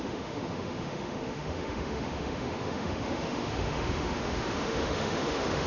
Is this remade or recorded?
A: remade